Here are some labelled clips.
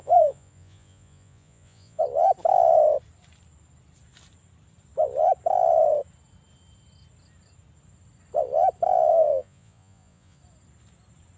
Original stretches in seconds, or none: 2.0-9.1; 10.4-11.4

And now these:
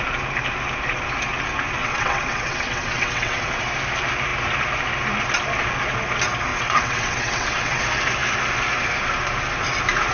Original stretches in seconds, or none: 0.0-1.8; 3.6-6.5; 7.8-10.1

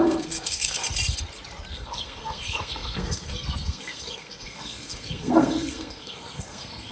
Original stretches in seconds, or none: 0.8-1.7